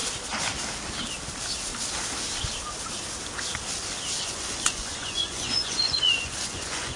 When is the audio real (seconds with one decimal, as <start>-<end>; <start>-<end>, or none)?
0.0-4.2